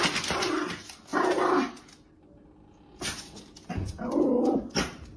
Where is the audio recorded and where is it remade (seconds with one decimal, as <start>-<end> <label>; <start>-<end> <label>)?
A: 0.0-5.2 recorded